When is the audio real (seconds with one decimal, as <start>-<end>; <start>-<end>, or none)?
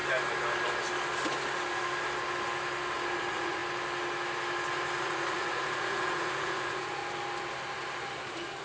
0.0-3.2; 3.6-5.0; 7.0-8.6